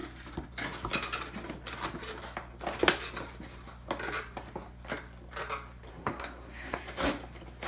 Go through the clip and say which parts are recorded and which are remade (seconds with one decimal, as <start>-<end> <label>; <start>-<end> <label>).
0.0-5.9 recorded; 5.9-6.8 remade; 6.8-7.7 recorded

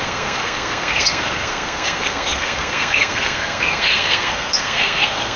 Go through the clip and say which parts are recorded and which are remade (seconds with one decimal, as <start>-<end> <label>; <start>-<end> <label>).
0.0-5.4 remade

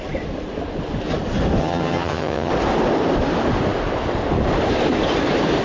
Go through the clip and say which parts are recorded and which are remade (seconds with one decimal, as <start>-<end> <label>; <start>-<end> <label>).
0.0-1.6 recorded; 1.6-2.5 remade; 2.5-5.6 recorded

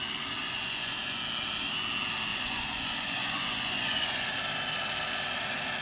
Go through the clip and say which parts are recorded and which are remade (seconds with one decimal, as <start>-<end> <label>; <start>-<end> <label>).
0.0-0.4 recorded; 0.4-1.2 remade; 1.2-2.3 recorded; 2.3-4.3 remade; 4.3-5.8 recorded

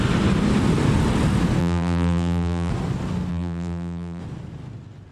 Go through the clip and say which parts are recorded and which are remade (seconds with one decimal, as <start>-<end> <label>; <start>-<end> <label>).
0.0-1.6 recorded; 1.6-2.7 remade; 2.7-3.3 recorded; 3.3-4.2 remade; 4.2-5.1 recorded

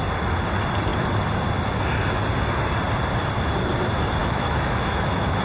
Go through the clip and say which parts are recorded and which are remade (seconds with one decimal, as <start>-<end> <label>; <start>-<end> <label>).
0.0-4.2 recorded; 4.2-5.4 remade

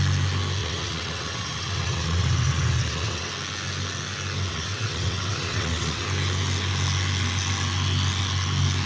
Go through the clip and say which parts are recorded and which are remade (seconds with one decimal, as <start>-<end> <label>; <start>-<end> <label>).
0.0-0.6 recorded; 0.6-3.3 remade; 3.3-4.5 recorded; 4.5-6.0 remade; 6.0-8.9 recorded